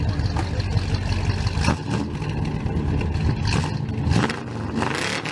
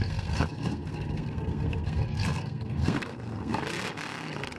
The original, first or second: first